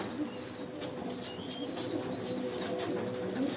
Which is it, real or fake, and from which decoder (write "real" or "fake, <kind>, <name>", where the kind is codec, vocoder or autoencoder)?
real